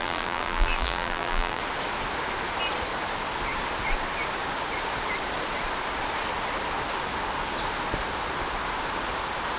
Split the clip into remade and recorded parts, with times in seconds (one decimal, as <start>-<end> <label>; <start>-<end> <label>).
0.0-1.6 remade; 1.6-9.6 recorded